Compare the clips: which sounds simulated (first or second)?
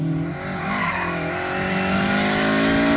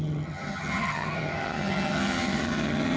second